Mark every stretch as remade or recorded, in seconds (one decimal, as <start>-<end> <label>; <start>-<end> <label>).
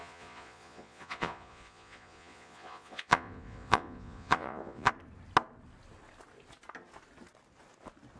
0.0-4.9 remade; 4.9-8.2 recorded